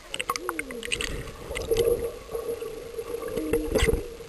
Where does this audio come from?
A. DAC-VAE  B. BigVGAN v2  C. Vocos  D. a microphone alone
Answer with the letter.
D